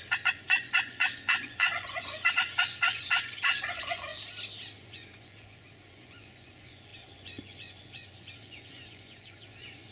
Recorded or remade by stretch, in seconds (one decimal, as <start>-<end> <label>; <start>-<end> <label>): 0.0-4.1 remade; 4.1-4.8 recorded; 4.8-9.9 remade